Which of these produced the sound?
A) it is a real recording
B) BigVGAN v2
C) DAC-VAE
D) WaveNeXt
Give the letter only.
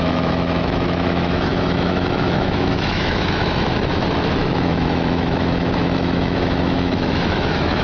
C